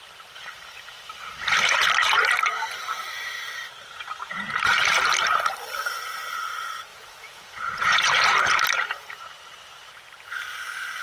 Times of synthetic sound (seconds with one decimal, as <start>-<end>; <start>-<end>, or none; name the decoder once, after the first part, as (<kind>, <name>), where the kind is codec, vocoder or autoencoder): 6.9-8.2 (vocoder, Vocos)